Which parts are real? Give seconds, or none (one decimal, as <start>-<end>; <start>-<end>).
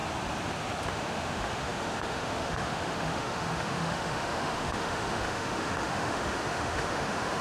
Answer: 0.0-0.9